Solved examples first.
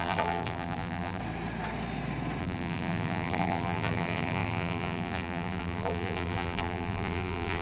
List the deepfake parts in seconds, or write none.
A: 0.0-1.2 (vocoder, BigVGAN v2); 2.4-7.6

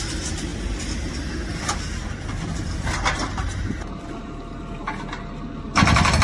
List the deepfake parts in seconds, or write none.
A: 1.5-5.0 (vocoder, BigVGAN v2)

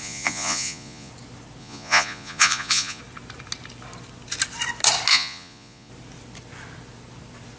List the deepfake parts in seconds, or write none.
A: 0.0-1.1 (vocoder, Vocos); 1.6-3.0; 5.1-5.9

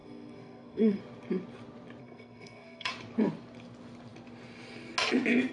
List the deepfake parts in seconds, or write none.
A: 0.0-1.0 (codec, SNAC); 2.0-2.9